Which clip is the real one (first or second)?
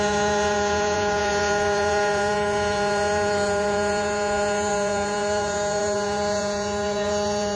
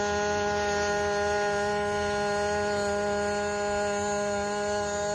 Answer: second